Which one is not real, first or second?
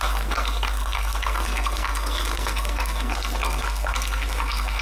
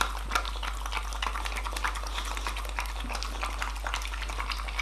first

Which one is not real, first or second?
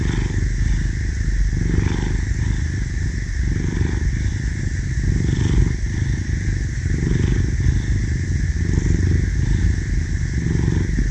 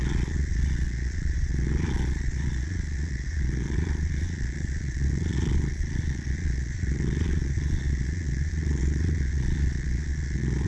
second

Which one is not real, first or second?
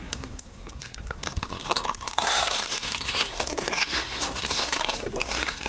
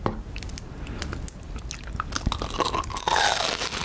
first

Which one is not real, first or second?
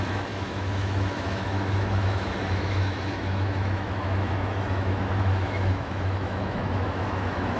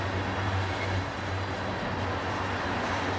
first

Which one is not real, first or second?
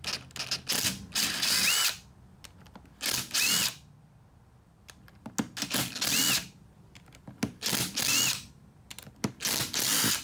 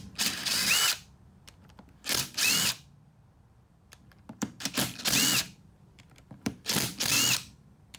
second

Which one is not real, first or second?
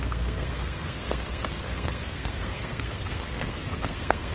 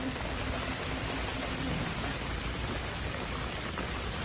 first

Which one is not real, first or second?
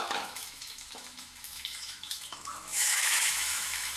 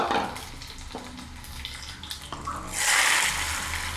first